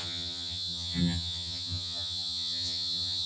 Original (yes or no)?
no